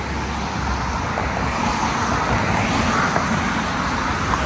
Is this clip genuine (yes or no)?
yes